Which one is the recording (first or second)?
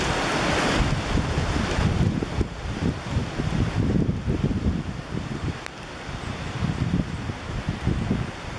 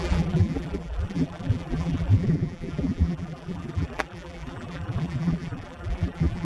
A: first